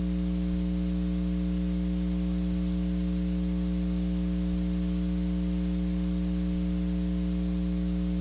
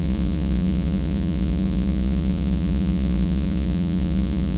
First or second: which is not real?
second